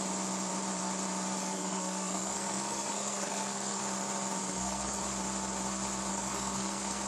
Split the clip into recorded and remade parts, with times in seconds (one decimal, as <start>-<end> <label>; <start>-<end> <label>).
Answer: 0.0-1.4 recorded; 1.4-3.8 remade; 3.8-4.4 recorded; 4.4-5.0 remade; 5.0-6.1 recorded; 6.1-7.1 remade